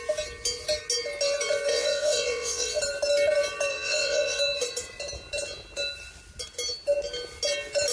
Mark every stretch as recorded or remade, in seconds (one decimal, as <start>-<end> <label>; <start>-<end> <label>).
0.0-1.7 recorded; 1.7-2.8 remade; 2.8-3.7 recorded; 3.7-4.4 remade; 4.4-7.9 recorded